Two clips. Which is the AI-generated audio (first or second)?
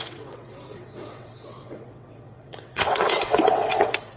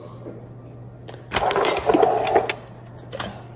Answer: first